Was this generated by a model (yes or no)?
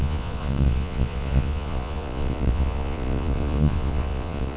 yes